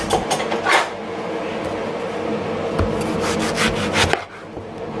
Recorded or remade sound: recorded